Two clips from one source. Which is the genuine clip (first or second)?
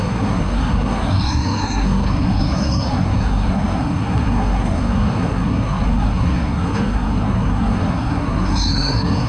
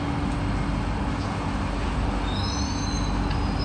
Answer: second